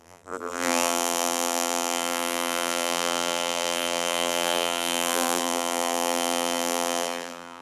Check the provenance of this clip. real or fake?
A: fake